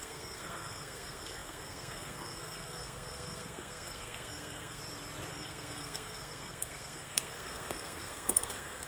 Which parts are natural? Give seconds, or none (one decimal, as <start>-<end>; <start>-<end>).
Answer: 4.8-5.3